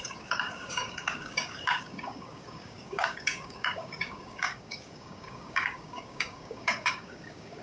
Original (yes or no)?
no